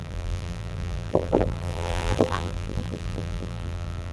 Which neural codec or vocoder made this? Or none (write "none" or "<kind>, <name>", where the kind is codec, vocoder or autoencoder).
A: vocoder, BigVGAN v2